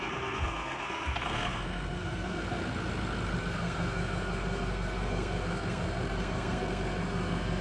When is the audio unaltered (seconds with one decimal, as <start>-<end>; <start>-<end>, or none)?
2.6-3.4